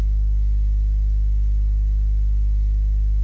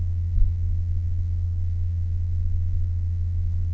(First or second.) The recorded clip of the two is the first